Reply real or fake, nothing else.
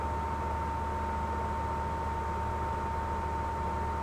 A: real